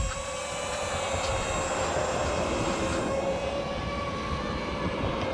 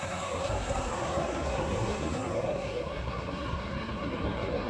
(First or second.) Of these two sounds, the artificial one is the second